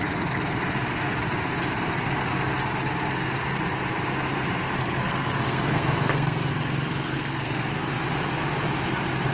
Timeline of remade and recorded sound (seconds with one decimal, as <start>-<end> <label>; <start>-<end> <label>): 0.0-4.8 recorded; 4.8-6.5 remade; 6.5-7.1 recorded; 7.1-7.7 remade; 7.7-9.3 recorded

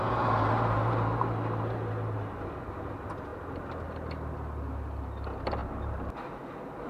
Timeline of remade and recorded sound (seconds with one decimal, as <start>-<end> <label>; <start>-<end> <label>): 0.0-6.9 recorded

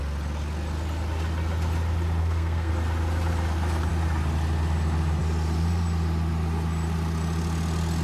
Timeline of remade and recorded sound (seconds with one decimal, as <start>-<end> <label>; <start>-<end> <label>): 0.0-2.2 recorded; 2.2-2.7 remade; 2.7-8.0 recorded

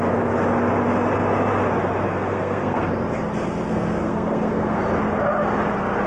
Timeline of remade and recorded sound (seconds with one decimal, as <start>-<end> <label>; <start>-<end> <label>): 0.0-2.1 recorded; 2.1-2.9 remade; 2.9-3.7 recorded; 3.7-4.8 remade; 4.8-6.1 recorded

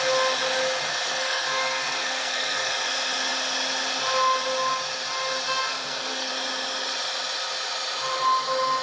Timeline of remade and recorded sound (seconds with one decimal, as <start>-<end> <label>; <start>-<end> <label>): 0.0-0.9 recorded; 0.9-2.7 remade; 2.7-5.7 recorded; 5.7-6.3 remade; 6.3-8.8 recorded